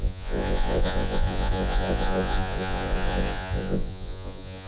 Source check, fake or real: fake